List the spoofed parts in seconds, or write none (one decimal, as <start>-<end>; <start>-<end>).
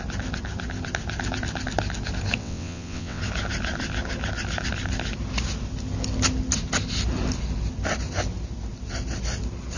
2.4-3.2